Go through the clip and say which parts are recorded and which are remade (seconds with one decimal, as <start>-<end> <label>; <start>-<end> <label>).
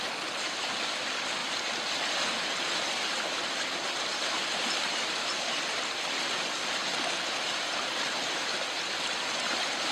0.0-9.9 recorded